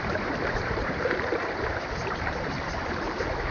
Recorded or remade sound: remade